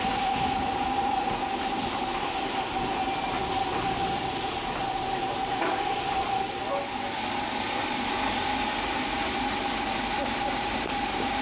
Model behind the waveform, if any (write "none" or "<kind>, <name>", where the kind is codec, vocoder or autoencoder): vocoder, BigVGAN v2